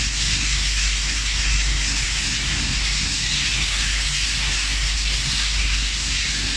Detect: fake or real fake